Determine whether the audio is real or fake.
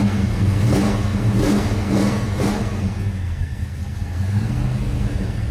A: fake